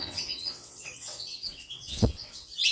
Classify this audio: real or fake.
fake